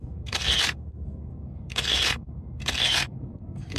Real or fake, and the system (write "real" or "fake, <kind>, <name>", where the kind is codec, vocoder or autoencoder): fake, codec, SNAC